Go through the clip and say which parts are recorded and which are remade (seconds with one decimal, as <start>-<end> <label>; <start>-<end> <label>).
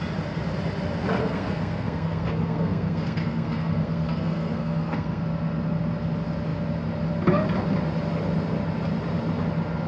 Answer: 0.0-1.2 recorded; 1.2-5.2 remade; 5.2-9.9 recorded